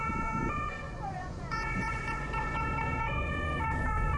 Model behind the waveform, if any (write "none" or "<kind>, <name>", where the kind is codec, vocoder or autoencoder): vocoder, Vocos